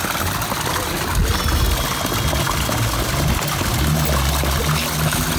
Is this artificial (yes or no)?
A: no